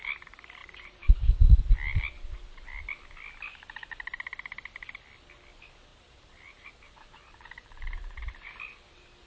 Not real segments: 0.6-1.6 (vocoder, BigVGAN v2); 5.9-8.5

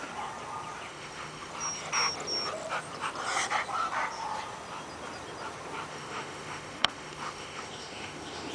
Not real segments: 0.9-1.5 (autoencoder, DAC-VAE); 5.9-8.5

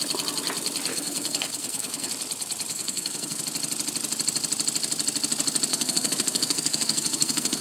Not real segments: 0.9-2.1 (codec, SNAC); 2.7-3.4; 5.7-7.6

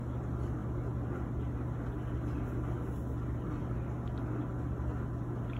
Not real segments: none

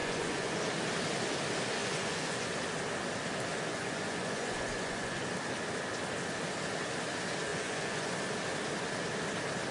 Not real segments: 0.0-0.6 (vocoder, Vocos); 1.8-2.5; 3.7-5.2; 7.5-8.1

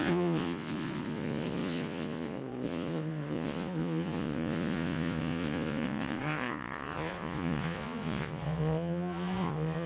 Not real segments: 0.0-9.9 (vocoder, Vocos)